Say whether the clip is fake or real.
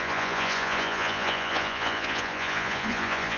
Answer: fake